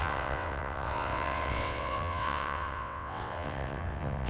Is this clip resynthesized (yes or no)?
yes